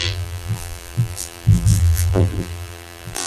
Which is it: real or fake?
fake